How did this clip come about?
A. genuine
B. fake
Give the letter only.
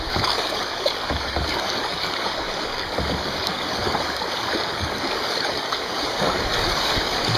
B